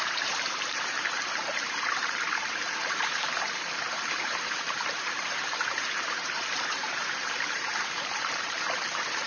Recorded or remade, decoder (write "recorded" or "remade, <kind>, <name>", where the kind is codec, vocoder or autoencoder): remade, vocoder, BigVGAN v2